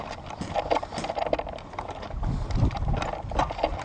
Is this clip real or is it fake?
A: real